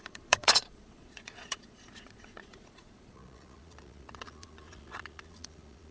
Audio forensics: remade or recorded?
remade